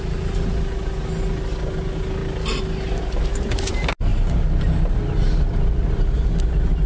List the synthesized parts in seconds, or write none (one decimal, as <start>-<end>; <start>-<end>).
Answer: none